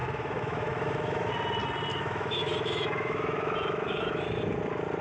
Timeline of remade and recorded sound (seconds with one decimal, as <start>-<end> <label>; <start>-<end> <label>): 0.0-1.3 remade; 1.3-1.9 recorded; 1.9-4.4 remade; 4.4-5.0 recorded